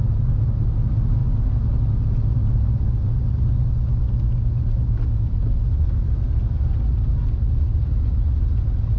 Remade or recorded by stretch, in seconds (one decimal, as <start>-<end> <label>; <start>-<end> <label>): 0.0-9.0 recorded

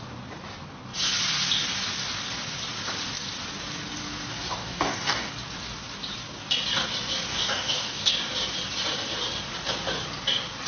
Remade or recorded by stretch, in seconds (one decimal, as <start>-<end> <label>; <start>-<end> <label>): 0.0-4.3 recorded; 4.3-5.3 remade; 5.3-7.3 recorded; 7.3-8.1 remade; 8.1-10.7 recorded

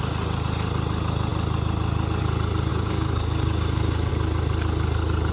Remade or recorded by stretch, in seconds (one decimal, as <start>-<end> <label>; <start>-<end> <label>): 0.0-2.7 recorded; 2.7-4.1 remade; 4.1-5.3 recorded

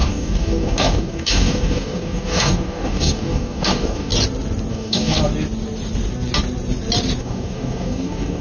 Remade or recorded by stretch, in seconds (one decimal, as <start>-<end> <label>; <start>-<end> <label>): 0.0-4.1 remade; 4.1-4.7 recorded; 4.7-5.2 remade; 5.2-7.2 recorded; 7.2-8.4 remade

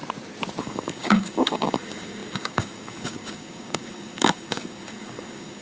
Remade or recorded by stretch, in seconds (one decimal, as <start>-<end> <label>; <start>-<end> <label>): 0.0-0.6 recorded; 0.6-5.6 remade

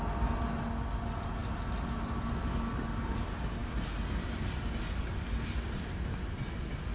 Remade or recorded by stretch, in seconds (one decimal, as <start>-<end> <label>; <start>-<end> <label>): 0.0-6.9 recorded

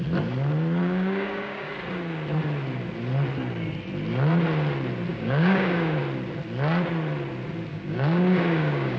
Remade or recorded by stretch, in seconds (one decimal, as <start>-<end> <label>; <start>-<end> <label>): 0.0-0.8 recorded; 0.8-1.7 remade; 1.7-5.1 recorded; 5.1-6.0 remade; 6.0-7.7 recorded; 7.7-9.0 remade

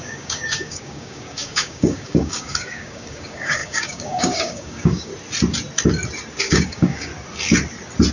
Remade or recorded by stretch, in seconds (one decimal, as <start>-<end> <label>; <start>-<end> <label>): 0.0-5.1 remade; 5.1-6.4 recorded; 6.4-7.1 remade; 7.1-8.1 recorded